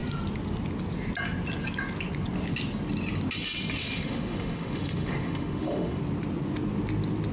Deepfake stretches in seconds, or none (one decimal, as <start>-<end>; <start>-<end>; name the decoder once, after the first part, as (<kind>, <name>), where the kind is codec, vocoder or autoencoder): 3.8-6.0 (autoencoder, DAC-VAE)